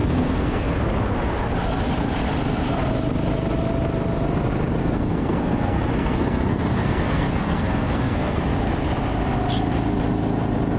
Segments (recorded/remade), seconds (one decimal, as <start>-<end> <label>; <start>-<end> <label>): 0.0-0.7 remade; 0.7-4.8 recorded; 4.8-8.4 remade; 8.4-10.8 recorded